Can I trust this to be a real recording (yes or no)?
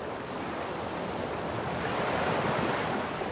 yes